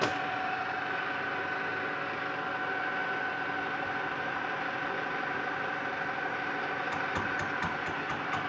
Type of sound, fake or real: real